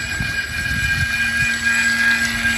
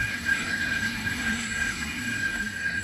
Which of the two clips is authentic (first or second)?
first